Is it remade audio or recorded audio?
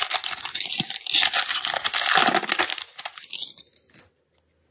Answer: recorded